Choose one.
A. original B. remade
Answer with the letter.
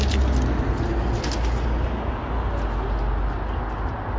A